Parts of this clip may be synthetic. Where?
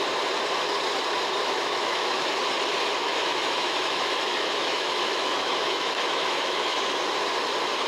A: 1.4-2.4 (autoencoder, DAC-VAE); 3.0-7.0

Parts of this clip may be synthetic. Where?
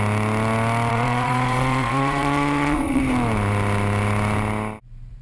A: 0.9-3.0 (vocoder, Vocos)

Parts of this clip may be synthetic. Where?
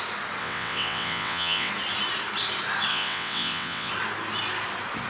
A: 0.4-1.7 (vocoder, WaveNeXt); 2.9-3.9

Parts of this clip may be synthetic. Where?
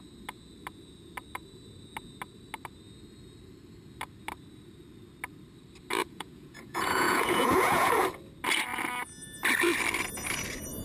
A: 6.0-7.9 (vocoder, Vocos)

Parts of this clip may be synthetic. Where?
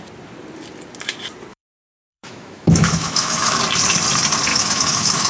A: 1.5-3.6 (autoencoder, DAC-VAE); 4.5-5.3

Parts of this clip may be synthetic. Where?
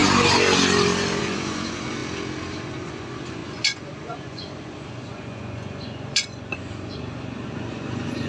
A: 1.2-2.0 (vocoder, Vocos); 2.5-8.3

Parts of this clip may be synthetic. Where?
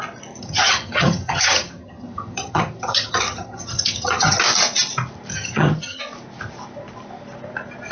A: 0.4-4.4 (vocoder, HiFi-GAN); 5.3-6.0